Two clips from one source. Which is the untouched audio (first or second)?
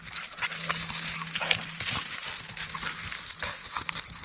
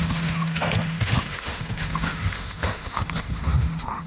first